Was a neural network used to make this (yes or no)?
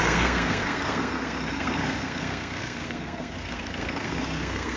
yes